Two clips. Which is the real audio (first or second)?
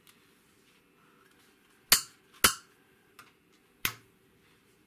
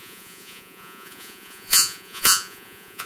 first